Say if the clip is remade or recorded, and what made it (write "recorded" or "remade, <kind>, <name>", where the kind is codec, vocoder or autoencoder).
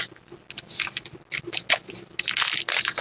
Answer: recorded